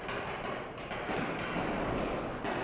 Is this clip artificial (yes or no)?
no